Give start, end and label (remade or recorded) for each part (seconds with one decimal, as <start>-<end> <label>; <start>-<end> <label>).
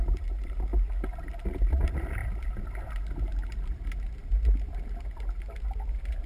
0.0-0.7 remade; 0.7-1.4 recorded; 1.4-2.2 remade; 2.2-6.3 recorded